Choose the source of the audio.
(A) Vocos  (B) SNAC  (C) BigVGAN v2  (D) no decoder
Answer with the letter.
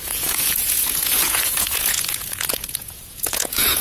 A